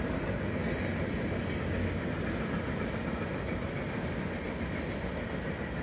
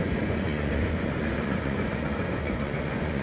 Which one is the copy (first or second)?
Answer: second